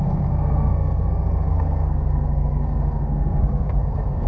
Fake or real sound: fake